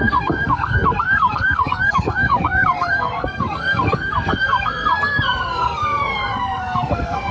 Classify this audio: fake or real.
fake